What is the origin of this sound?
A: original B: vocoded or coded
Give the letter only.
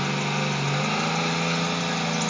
A